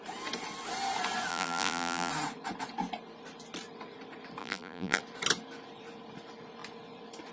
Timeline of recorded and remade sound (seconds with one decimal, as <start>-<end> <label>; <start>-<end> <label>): 0.0-1.3 recorded; 1.3-2.1 remade; 2.1-4.4 recorded; 4.4-5.0 remade; 5.0-7.3 recorded